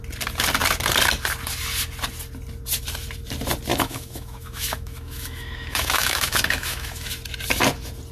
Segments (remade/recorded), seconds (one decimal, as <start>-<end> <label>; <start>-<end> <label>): 0.0-3.7 recorded; 3.7-7.1 remade; 7.1-8.1 recorded